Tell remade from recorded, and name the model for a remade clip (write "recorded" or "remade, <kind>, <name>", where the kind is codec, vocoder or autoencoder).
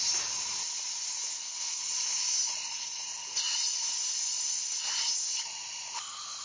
recorded